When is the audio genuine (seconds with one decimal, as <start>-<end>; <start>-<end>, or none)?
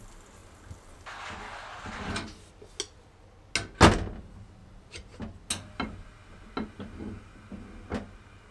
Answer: 0.0-4.6; 5.2-8.5